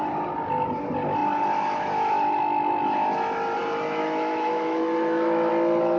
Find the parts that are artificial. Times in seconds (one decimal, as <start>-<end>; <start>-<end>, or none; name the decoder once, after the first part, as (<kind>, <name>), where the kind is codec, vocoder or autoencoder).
4.0-5.5 (autoencoder, DAC-VAE)